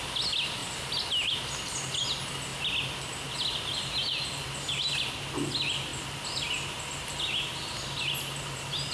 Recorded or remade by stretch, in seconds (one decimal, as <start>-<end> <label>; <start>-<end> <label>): 0.0-8.9 recorded